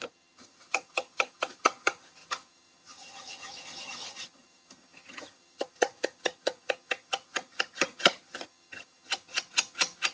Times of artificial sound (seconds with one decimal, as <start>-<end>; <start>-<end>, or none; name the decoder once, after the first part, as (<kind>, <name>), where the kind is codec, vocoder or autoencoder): 0.0-10.1 (vocoder, HiFi-GAN)